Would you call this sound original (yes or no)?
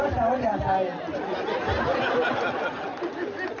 yes